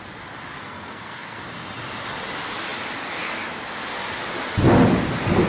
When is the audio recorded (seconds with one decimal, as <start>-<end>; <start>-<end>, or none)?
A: 0.0-0.6; 1.4-5.5